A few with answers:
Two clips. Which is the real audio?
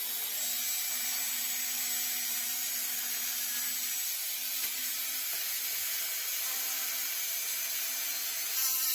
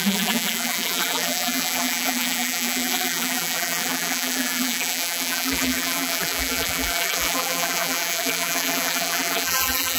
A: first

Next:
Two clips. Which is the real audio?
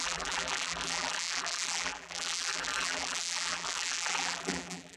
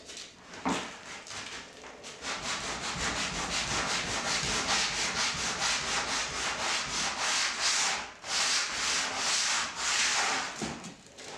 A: second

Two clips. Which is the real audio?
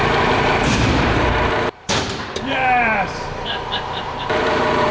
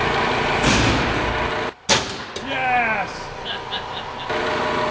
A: second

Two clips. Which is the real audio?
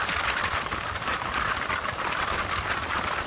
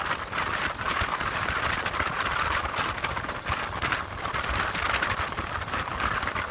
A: second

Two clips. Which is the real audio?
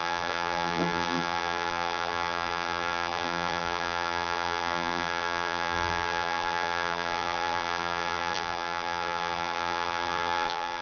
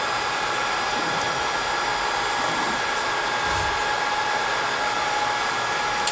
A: second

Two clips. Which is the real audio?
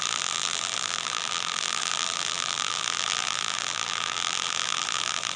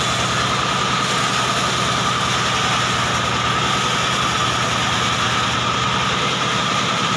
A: second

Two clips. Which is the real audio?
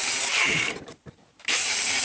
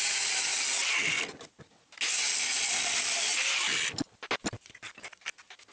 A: second